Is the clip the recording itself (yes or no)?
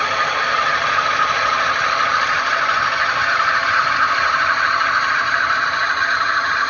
no